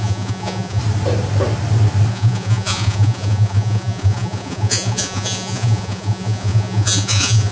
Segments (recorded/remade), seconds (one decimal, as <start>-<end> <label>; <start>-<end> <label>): 0.0-0.8 remade; 0.8-2.1 recorded; 2.1-7.5 remade